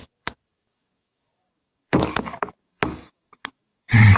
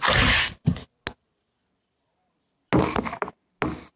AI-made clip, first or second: first